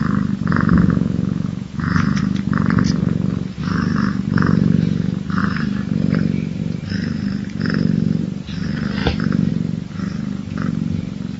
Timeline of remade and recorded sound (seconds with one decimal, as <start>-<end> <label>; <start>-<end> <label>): 0.0-0.5 recorded; 0.5-2.2 remade; 2.2-11.4 recorded